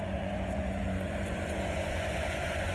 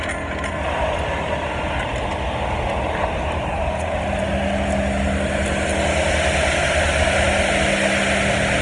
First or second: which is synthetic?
first